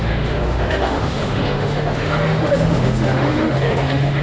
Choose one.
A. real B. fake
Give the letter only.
B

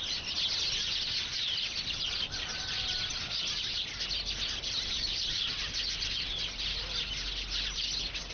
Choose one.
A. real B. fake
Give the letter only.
A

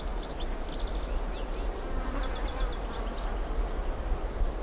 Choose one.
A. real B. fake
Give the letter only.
A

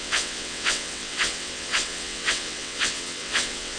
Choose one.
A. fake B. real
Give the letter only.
A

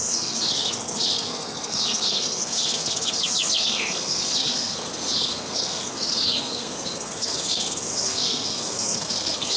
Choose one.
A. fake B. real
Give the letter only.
A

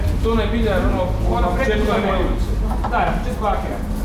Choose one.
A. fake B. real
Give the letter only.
B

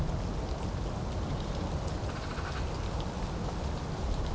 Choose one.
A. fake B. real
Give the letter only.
B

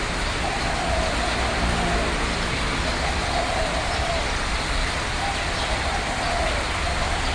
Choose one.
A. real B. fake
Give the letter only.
A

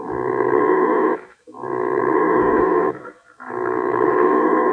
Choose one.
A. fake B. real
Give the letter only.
A